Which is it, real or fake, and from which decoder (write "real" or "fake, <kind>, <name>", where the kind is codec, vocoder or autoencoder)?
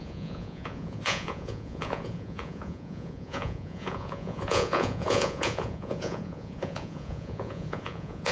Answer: fake, vocoder, Vocos